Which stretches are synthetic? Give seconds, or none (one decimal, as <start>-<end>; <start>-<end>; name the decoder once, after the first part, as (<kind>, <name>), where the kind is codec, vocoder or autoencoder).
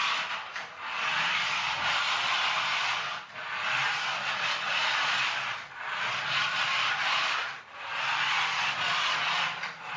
none